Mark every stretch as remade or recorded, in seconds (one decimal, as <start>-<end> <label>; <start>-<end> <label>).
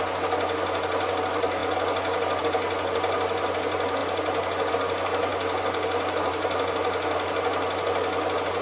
0.0-8.6 recorded